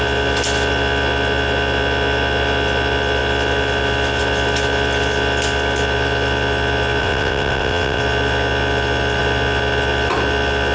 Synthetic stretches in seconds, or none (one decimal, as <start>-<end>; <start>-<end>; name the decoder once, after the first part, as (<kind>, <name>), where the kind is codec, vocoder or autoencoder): 7.0-8.0 (vocoder, WaveNeXt)